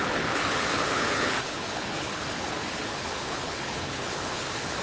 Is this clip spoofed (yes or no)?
yes